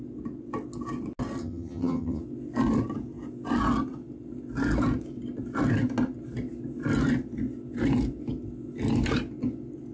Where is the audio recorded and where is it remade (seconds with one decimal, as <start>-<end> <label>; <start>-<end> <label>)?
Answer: 0.0-1.4 recorded; 1.4-2.2 remade; 2.2-9.9 recorded

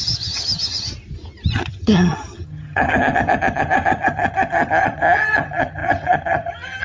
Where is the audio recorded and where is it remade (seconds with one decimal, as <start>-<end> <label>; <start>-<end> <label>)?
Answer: 0.0-0.9 remade; 0.9-1.5 recorded; 1.5-6.8 remade

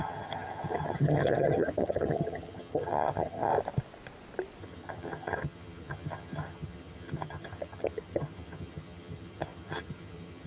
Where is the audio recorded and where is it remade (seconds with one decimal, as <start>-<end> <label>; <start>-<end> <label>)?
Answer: 0.0-3.5 remade; 3.5-4.6 recorded; 4.6-10.5 remade

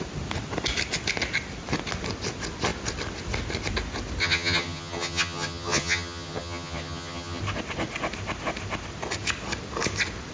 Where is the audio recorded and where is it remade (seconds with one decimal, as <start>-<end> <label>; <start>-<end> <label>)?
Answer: 0.0-4.2 recorded; 4.2-7.4 remade; 7.4-10.3 recorded

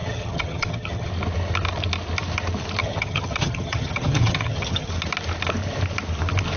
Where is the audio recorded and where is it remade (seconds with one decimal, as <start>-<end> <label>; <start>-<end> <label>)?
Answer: 0.0-1.1 remade; 1.1-2.8 recorded; 2.8-4.9 remade; 4.9-6.6 recorded

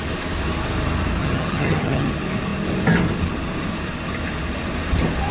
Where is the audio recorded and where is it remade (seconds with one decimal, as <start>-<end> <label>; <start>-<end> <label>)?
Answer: 0.0-1.2 recorded; 1.2-2.1 remade; 2.1-5.3 recorded